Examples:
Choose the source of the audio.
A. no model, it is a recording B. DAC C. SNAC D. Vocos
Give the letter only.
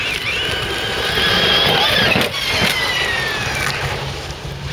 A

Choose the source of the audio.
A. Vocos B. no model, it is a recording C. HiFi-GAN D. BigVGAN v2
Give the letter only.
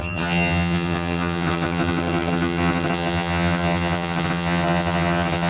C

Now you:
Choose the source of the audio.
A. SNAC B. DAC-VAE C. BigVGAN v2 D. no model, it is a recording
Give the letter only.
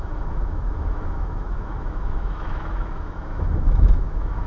B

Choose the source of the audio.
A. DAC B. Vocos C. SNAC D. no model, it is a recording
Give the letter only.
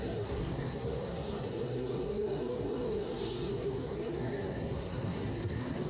C